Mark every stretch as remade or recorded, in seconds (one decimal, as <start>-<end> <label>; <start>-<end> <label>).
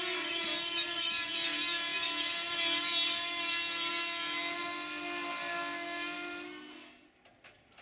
0.0-7.8 recorded